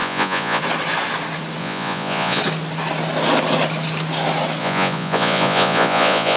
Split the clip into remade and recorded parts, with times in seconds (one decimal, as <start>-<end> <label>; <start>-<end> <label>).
0.0-0.6 remade; 0.6-1.6 recorded; 1.6-2.4 remade; 2.4-4.6 recorded; 4.6-6.4 remade